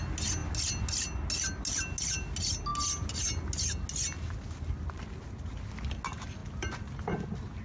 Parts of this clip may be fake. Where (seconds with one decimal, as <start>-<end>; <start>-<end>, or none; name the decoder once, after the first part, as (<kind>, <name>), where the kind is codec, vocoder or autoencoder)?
6.4-6.9 (vocoder, BigVGAN v2)